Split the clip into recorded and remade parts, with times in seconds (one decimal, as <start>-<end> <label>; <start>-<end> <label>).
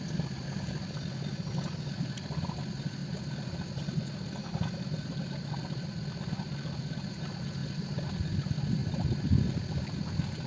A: 0.0-3.0 recorded; 3.0-3.7 remade; 3.7-4.5 recorded; 4.5-6.8 remade; 6.8-8.8 recorded; 8.8-10.5 remade